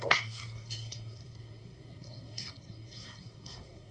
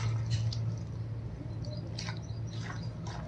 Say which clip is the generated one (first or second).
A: first